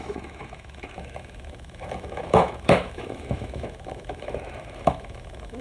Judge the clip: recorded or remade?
remade